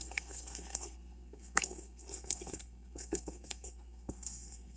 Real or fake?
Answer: fake